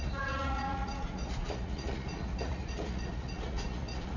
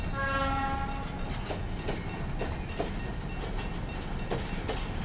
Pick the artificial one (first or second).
first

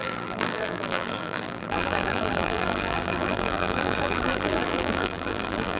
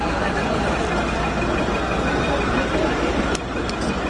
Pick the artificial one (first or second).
first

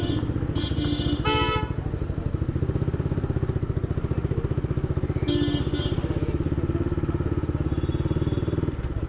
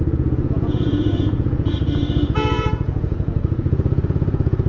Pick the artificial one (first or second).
second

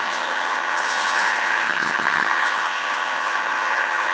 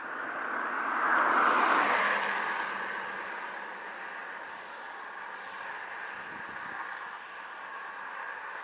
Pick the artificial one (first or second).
first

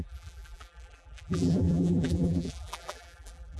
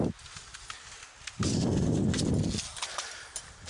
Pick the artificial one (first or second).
first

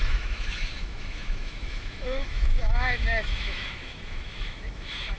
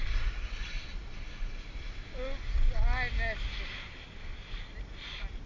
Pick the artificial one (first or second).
first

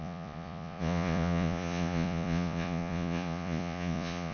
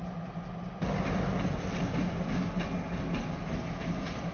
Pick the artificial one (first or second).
first